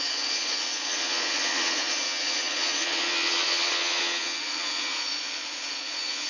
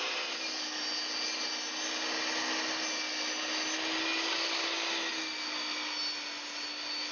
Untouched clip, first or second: second